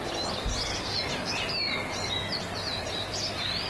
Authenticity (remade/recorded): recorded